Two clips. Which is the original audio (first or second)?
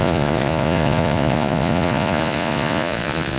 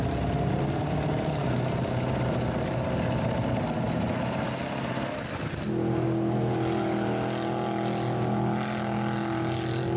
second